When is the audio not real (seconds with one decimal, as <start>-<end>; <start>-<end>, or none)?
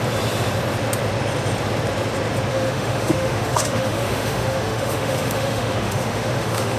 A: 2.5-6.8